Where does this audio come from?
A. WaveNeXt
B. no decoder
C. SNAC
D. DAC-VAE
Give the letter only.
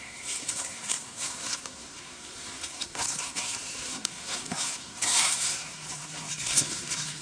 C